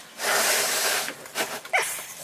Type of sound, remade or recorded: remade